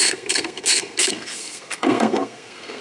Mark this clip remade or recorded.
remade